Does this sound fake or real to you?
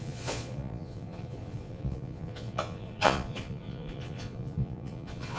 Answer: fake